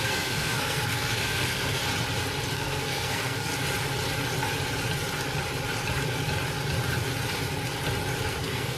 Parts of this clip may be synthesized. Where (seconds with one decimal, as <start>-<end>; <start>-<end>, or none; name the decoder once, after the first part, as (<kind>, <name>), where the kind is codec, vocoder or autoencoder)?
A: 0.0-1.8 (codec, SNAC); 2.5-3.5; 8.3-8.8